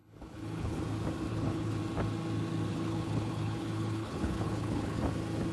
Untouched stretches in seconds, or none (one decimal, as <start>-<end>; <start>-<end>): 0.8-1.3; 1.8-2.7; 5.0-5.5